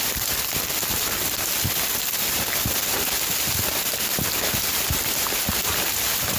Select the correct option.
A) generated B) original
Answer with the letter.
B